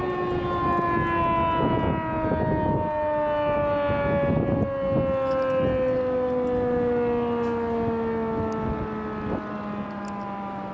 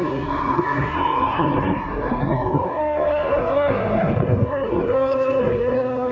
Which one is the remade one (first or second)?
second